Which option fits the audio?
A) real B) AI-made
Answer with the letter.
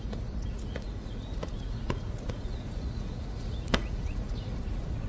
B